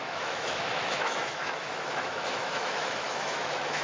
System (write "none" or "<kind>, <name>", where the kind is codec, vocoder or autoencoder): autoencoder, DAC-VAE